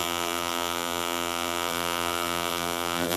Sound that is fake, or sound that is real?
fake